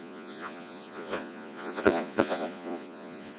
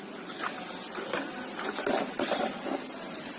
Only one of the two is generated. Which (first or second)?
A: first